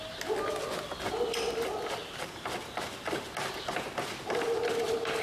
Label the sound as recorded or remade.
recorded